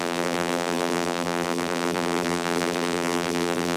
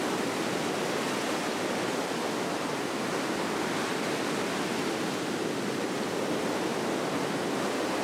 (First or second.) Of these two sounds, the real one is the second